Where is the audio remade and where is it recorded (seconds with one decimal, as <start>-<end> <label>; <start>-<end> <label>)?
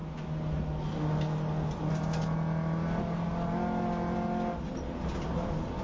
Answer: 0.0-5.8 recorded